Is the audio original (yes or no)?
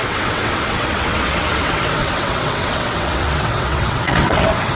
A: no